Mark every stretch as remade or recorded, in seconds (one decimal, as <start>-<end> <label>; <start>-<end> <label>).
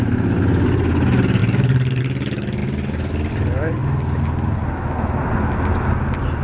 0.0-1.4 recorded; 1.4-2.0 remade; 2.0-6.4 recorded